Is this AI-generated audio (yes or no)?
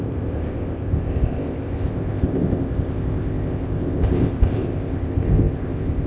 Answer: yes